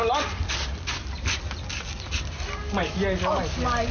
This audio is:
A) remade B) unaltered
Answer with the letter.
B